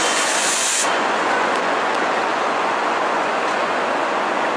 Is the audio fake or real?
fake